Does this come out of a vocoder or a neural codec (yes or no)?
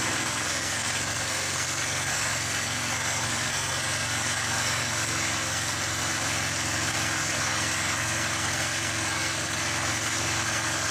yes